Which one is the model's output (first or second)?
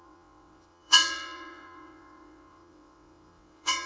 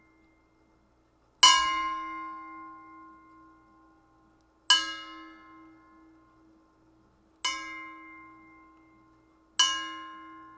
first